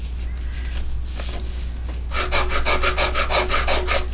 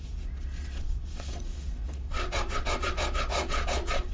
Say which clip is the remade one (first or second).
second